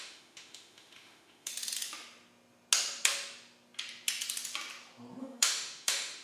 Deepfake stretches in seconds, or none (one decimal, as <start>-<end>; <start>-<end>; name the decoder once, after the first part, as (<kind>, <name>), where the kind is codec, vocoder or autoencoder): 0.0-1.5 (autoencoder, DAC-VAE); 5.2-6.2